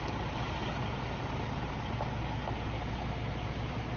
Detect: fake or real real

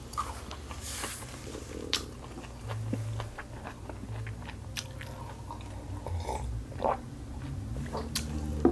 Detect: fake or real real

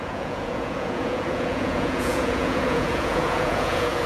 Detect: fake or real fake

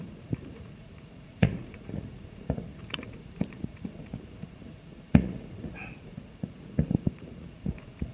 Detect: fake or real fake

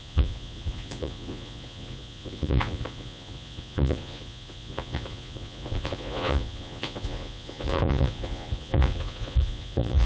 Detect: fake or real fake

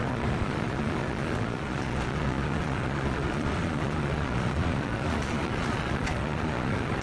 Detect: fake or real fake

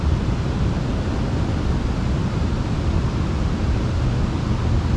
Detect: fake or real real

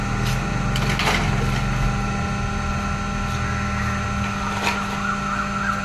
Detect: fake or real real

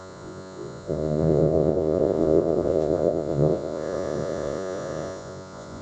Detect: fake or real fake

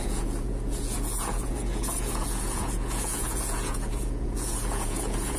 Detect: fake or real fake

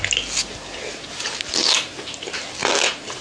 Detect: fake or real real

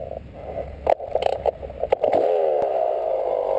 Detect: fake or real real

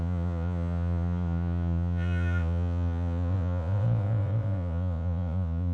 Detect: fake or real fake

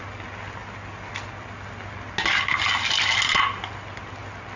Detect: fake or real real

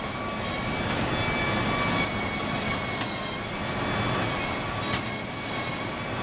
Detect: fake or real real